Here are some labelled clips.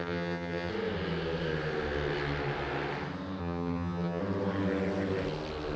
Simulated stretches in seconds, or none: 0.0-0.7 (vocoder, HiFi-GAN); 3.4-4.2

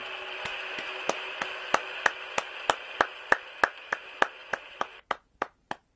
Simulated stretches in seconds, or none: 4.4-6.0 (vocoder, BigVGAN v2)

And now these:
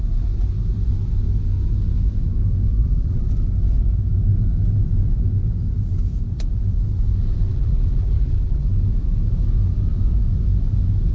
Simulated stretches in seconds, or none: 2.8-3.3 (vocoder, BigVGAN v2); 7.5-8.7

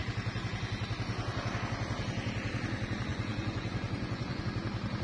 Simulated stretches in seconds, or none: 3.1-4.4 (vocoder, Vocos)

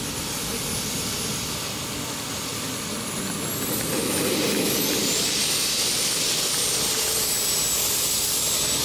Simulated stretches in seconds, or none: none

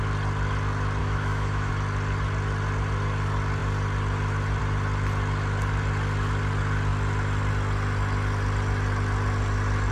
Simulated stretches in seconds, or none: 1.0-1.7 (autoencoder, DAC-VAE)